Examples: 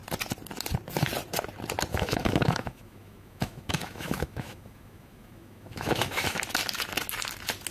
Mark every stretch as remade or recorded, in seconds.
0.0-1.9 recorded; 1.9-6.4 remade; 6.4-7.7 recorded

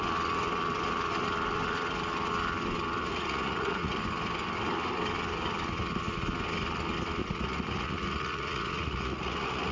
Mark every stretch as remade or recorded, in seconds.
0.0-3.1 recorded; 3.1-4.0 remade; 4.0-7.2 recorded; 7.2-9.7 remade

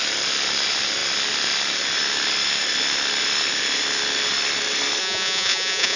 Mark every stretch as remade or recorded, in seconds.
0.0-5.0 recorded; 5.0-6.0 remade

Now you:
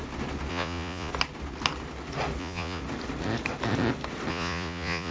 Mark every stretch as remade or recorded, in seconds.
0.0-0.5 recorded; 0.5-1.1 remade; 1.1-2.4 recorded; 2.4-2.8 remade; 2.8-4.3 recorded; 4.3-5.1 remade